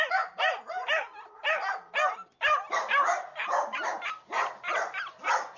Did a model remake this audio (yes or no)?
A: no